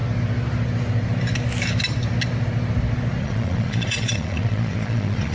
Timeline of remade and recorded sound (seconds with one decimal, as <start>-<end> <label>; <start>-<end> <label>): 0.0-3.2 recorded; 3.2-5.3 remade